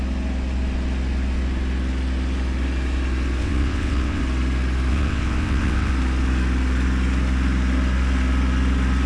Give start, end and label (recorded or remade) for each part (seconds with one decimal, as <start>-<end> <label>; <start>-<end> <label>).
0.0-3.4 recorded; 3.4-4.2 remade; 4.2-4.9 recorded; 4.9-5.9 remade; 5.9-9.1 recorded